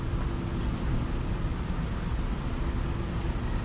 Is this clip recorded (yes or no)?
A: yes